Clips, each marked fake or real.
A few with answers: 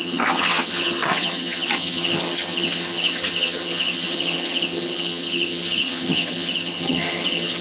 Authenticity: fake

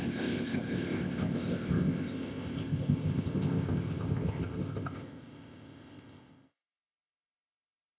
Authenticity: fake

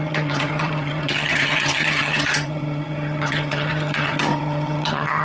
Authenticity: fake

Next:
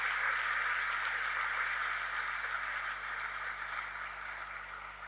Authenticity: real